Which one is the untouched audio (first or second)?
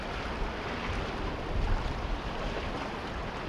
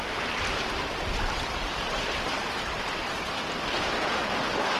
first